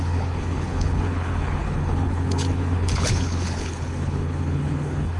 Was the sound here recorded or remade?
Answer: remade